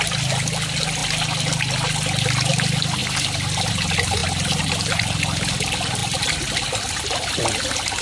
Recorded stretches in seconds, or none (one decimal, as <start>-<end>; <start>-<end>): 0.0-8.0